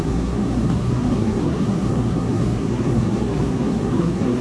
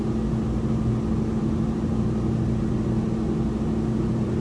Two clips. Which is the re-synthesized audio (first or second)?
first